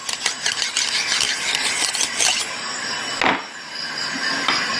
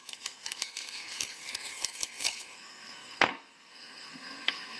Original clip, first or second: first